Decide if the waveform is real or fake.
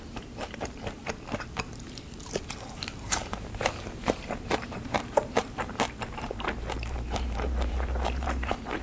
fake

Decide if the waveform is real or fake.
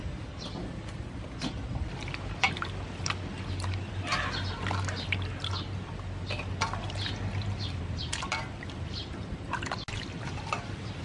real